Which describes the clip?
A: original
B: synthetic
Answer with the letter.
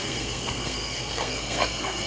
B